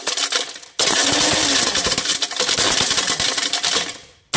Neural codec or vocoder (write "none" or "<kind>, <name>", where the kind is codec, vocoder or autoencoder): none